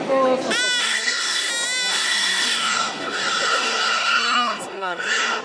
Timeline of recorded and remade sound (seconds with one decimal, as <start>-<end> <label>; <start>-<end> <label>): 0.0-0.8 recorded; 0.8-1.5 remade; 1.5-1.9 recorded; 1.9-5.4 remade